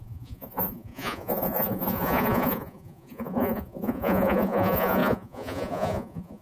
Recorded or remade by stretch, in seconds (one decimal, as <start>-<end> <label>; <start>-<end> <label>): 0.0-6.4 remade